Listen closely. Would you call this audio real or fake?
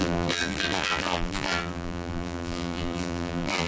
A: fake